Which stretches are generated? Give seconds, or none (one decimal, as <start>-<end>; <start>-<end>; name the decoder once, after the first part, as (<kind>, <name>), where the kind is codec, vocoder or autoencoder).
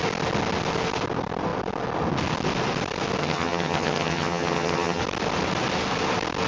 3.2-5.0 (vocoder, HiFi-GAN)